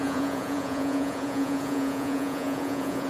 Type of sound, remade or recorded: remade